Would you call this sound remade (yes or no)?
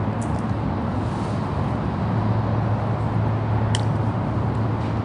no